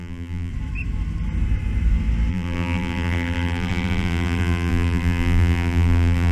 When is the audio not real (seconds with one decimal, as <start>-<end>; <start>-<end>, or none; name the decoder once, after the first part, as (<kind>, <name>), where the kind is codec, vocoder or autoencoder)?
0.0-0.5 (vocoder, BigVGAN v2); 2.3-6.3

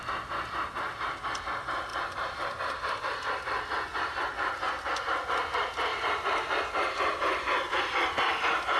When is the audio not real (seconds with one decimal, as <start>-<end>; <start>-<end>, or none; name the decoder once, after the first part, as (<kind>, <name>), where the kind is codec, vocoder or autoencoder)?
1.9-3.0 (vocoder, BigVGAN v2); 3.9-4.9; 5.9-7.8

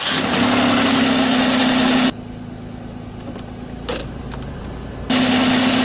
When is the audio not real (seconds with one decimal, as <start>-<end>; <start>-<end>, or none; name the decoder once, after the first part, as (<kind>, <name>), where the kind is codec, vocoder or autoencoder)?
4.0-4.6 (vocoder, BigVGAN v2)

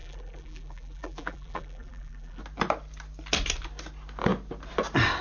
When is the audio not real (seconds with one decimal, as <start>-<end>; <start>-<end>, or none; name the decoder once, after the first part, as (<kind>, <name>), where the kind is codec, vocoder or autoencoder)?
0.0-2.4 (vocoder, BigVGAN v2)